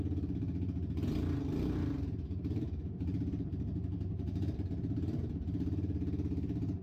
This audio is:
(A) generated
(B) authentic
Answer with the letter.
A